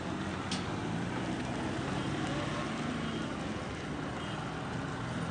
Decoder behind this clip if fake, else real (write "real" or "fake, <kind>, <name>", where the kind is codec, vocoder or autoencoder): real